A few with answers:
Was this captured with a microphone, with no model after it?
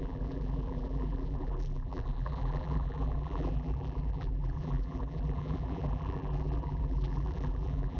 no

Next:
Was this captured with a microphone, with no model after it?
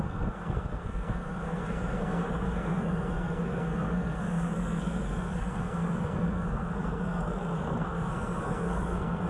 no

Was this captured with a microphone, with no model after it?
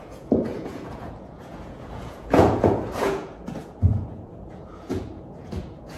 no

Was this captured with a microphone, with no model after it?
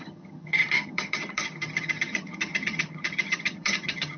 no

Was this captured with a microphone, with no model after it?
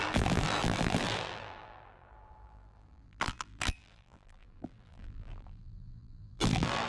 no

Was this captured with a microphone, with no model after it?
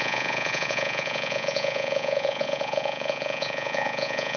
no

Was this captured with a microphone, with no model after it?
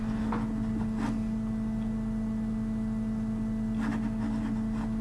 yes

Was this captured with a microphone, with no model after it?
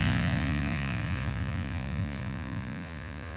no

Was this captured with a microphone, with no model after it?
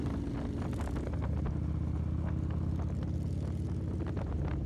yes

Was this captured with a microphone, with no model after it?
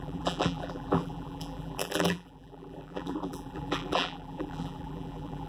no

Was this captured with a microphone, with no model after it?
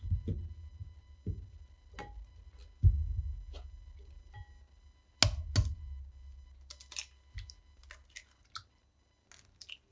yes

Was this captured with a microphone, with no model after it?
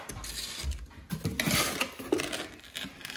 yes